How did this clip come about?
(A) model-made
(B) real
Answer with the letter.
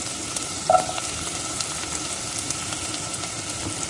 B